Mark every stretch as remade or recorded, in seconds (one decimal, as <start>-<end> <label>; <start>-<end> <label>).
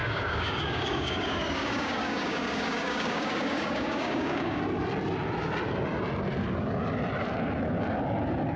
0.0-4.6 remade; 4.6-8.6 recorded